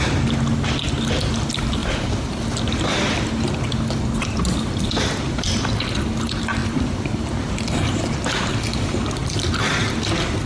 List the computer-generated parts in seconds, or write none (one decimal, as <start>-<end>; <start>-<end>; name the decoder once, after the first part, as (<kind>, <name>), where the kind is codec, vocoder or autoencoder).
1.8-2.5 (vocoder, BigVGAN v2); 6.6-7.2; 9.2-9.7